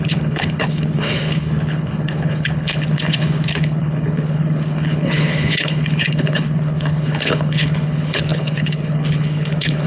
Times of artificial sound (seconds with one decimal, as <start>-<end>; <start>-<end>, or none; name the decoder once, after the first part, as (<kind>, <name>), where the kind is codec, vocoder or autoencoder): 0.0-9.9 (codec, HILCodec)